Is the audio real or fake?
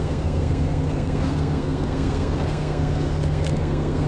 fake